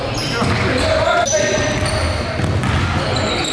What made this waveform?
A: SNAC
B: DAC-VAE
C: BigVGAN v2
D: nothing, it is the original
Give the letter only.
D